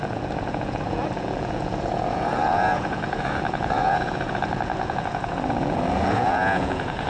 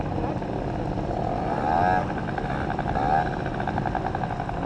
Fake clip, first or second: first